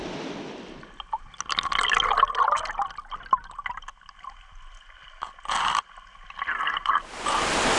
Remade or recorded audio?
recorded